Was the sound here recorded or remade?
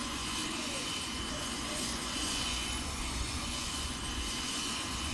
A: remade